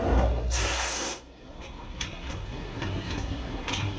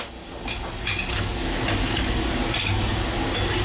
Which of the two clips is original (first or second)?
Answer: second